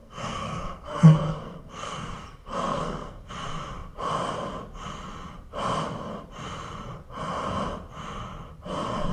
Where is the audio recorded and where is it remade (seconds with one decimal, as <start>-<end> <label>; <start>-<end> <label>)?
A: 0.0-3.3 remade; 3.3-9.1 recorded